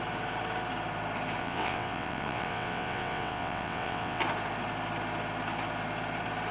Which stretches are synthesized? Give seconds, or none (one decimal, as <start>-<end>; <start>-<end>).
1.4-4.2